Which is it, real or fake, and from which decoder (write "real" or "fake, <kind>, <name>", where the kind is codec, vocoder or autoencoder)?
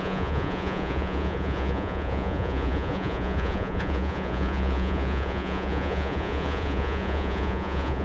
fake, vocoder, Vocos